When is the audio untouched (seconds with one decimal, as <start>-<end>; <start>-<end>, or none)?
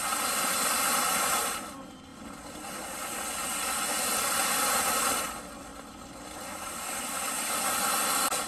0.0-8.5